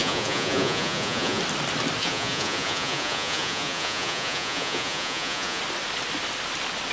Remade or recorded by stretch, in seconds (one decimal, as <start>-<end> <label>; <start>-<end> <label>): 0.0-1.4 remade; 1.4-2.0 recorded; 2.0-5.6 remade; 5.6-6.9 recorded